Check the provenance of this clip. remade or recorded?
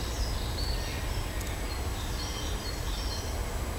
recorded